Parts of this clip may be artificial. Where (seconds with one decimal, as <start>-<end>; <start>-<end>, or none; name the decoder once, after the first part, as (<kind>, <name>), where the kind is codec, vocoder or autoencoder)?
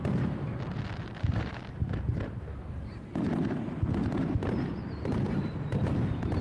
0.0-0.5 (vocoder, BigVGAN v2); 1.0-1.8; 4.9-6.4